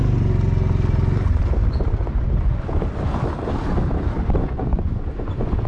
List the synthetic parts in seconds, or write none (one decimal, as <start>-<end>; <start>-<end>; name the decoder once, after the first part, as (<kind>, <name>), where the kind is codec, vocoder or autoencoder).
4.4-5.7 (vocoder, Vocos)